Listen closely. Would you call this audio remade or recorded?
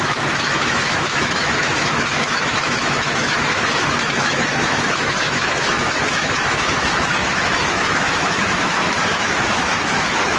remade